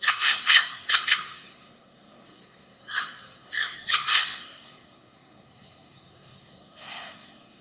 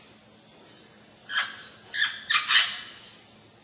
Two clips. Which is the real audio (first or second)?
second